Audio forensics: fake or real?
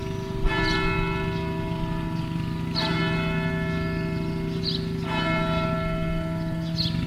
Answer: real